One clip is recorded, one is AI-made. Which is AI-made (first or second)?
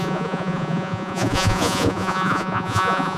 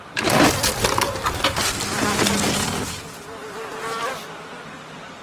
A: first